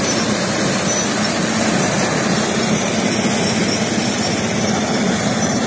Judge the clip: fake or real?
real